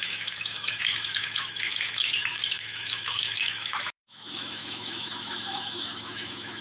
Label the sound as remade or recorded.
remade